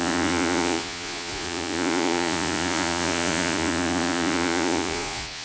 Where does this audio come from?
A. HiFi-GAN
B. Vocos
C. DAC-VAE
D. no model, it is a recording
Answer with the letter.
B